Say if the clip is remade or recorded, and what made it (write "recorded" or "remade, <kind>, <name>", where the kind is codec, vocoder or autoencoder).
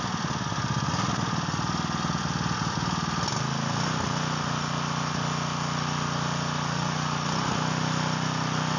recorded